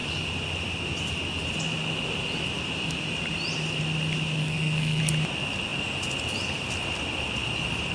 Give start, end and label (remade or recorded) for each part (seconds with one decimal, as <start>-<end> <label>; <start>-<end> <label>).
0.0-4.4 recorded; 4.4-5.0 remade; 5.0-7.9 recorded